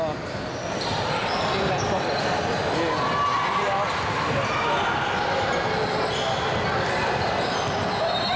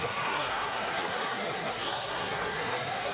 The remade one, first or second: second